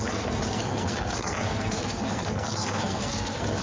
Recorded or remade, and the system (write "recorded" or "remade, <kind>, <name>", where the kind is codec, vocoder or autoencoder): remade, codec, SNAC